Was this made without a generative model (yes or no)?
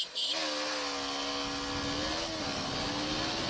yes